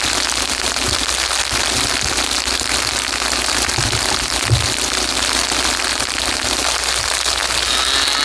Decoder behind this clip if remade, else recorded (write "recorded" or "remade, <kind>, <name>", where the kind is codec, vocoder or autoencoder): recorded